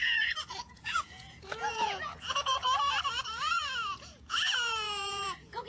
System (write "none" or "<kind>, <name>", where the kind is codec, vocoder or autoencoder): vocoder, Vocos